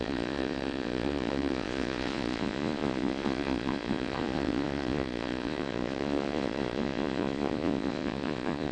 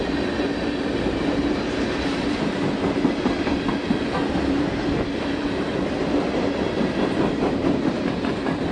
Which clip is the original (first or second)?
second